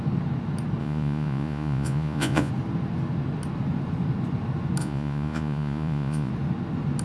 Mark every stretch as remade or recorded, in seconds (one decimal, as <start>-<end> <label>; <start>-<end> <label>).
0.0-0.8 recorded; 0.8-2.5 remade; 2.5-4.8 recorded; 4.8-6.3 remade; 6.3-7.0 recorded